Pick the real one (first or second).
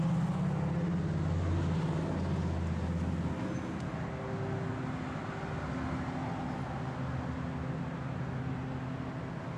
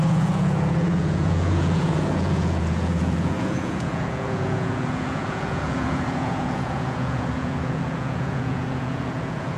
first